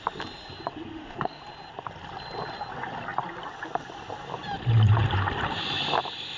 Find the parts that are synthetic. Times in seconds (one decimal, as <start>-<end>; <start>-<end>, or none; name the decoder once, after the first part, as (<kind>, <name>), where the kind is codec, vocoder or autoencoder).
0.9-1.4 (autoencoder, DAC-VAE)